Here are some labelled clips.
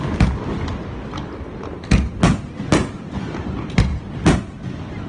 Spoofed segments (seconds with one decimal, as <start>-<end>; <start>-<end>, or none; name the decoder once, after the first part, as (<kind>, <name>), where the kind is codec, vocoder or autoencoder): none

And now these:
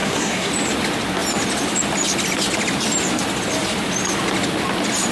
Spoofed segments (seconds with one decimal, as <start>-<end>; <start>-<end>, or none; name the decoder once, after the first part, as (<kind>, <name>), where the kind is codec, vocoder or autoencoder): 0.0-0.5 (codec, SNAC)

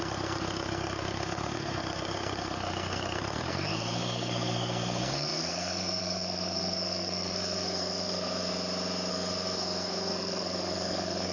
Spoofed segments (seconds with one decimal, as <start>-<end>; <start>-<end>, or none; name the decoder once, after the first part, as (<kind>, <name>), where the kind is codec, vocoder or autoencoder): 0.0-8.5 (codec, SNAC); 9.1-11.3

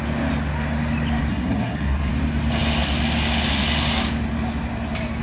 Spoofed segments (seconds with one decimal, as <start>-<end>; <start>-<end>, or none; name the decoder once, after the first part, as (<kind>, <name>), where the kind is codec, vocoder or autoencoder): 1.3-2.1 (codec, SNAC)

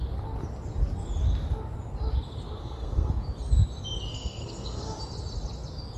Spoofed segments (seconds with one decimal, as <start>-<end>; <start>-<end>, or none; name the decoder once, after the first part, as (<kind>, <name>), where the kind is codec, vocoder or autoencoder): 2.6-3.1 (codec, SNAC); 4.1-5.0

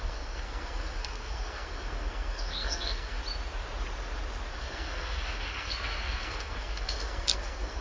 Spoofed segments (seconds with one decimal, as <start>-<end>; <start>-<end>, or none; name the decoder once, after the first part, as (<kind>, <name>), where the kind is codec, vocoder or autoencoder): 0.0-3.2 (codec, SNAC); 4.5-7.8

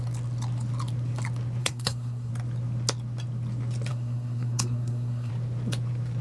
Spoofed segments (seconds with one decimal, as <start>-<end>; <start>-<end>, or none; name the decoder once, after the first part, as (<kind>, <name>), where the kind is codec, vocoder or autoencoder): 1.6-2.3 (codec, SNAC); 3.9-5.3